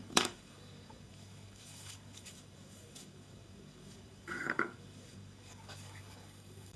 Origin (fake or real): fake